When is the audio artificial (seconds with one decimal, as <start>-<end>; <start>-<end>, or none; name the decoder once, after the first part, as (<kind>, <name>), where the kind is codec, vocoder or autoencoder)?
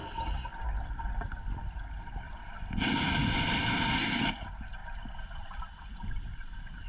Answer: none